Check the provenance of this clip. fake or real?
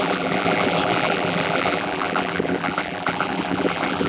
fake